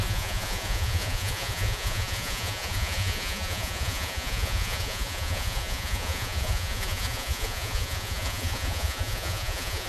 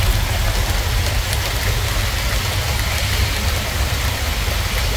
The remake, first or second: first